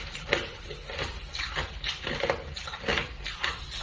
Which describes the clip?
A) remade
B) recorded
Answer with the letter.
B